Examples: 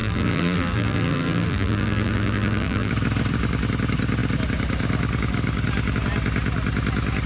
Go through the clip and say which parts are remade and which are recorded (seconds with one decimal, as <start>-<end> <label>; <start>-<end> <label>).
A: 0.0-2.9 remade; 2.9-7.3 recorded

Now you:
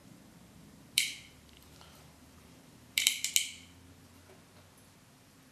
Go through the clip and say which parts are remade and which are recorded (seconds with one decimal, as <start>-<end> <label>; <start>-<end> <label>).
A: 0.0-3.3 remade; 3.3-5.5 recorded

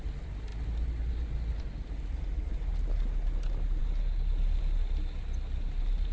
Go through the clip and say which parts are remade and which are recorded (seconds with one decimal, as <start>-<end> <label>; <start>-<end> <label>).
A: 0.0-6.1 recorded